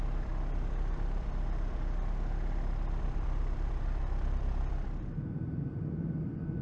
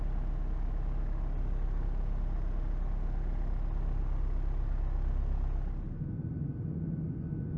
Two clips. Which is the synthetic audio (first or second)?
first